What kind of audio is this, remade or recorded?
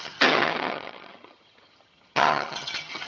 remade